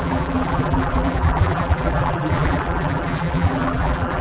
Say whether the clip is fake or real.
fake